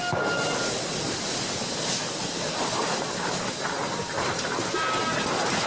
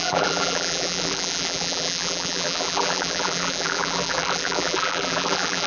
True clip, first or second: first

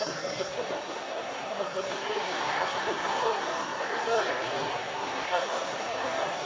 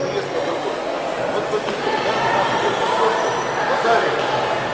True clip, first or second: second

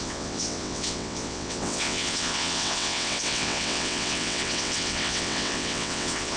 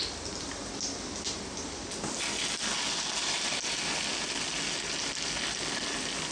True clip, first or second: second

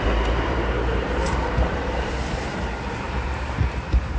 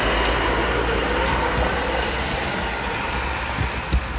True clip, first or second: second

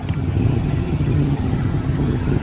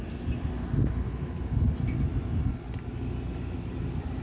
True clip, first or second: second